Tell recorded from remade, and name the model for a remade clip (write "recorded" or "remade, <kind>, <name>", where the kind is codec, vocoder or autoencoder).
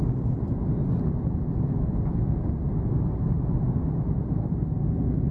recorded